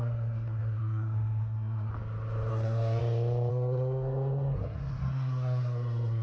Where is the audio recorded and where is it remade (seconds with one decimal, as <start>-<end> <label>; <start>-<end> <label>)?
0.0-1.9 remade; 1.9-2.5 recorded; 2.5-3.0 remade; 3.0-3.5 recorded; 3.5-6.2 remade